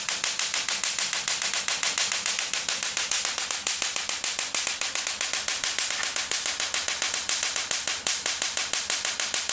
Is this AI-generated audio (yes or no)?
no